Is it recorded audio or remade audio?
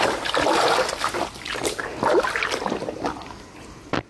recorded